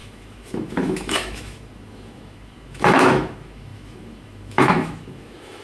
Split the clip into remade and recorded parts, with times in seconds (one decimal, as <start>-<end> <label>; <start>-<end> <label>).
0.0-5.6 remade